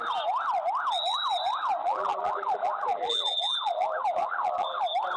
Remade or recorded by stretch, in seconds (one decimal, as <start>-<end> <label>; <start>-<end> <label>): 0.0-1.8 recorded; 1.8-4.8 remade; 4.8-5.2 recorded